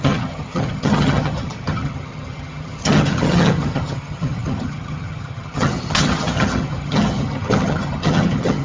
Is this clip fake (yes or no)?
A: yes